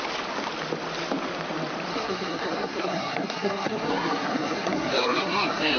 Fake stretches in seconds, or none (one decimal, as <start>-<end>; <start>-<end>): 1.9-5.8